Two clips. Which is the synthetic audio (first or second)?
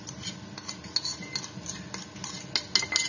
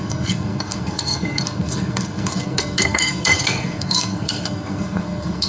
second